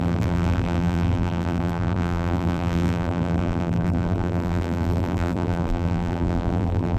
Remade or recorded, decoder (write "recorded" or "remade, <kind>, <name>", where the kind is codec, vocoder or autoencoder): remade, vocoder, BigVGAN v2